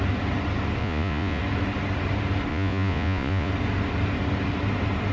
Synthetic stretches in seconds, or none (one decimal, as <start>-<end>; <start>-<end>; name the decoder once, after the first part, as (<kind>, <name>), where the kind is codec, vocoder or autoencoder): 0.8-1.4 (vocoder, Vocos); 2.5-3.5